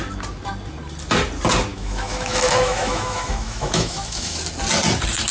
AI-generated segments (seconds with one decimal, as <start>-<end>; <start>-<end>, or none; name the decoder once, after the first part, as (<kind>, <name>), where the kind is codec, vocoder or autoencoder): 1.7-4.4 (autoencoder, DAC-VAE)